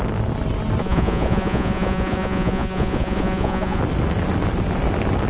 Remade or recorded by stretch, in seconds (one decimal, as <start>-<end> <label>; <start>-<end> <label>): 0.0-0.8 recorded; 0.8-3.8 remade; 3.8-5.3 recorded